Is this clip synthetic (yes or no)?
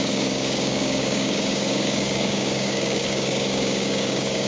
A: yes